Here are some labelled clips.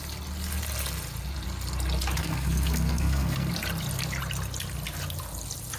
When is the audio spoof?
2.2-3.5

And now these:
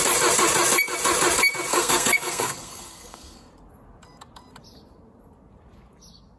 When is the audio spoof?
1.7-3.5

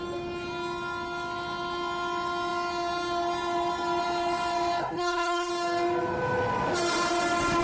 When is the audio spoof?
4.8-5.5

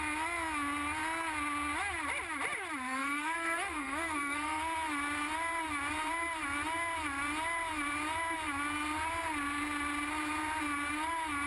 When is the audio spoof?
3.0-4.6

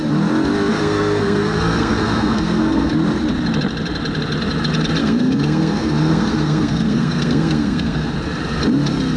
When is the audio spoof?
0.7-2.9; 5.0-8.1

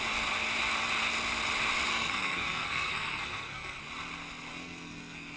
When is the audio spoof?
1.9-3.8; 4.5-5.4